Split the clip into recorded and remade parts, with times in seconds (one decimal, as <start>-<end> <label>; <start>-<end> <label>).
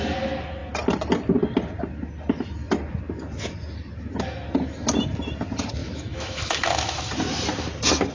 0.0-5.8 recorded; 5.8-7.1 remade; 7.1-8.1 recorded